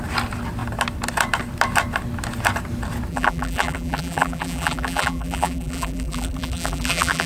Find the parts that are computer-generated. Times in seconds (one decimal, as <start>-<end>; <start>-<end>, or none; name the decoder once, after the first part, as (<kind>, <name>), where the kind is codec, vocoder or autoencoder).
3.1-7.3 (vocoder, BigVGAN v2)